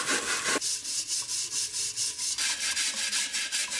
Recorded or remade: recorded